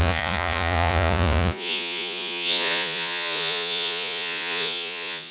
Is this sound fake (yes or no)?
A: yes